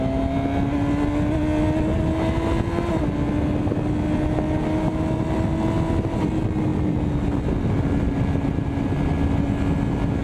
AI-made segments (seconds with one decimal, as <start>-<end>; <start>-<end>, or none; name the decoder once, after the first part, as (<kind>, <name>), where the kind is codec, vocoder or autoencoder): none